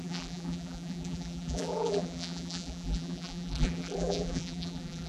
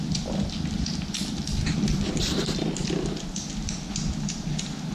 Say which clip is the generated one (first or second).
first